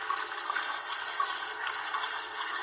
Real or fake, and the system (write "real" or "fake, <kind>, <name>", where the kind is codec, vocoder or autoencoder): fake, codec, SNAC